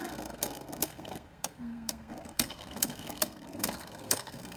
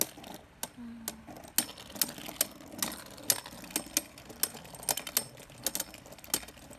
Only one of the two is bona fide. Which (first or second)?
second